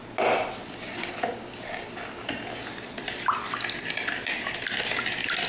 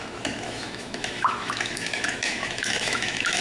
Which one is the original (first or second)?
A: first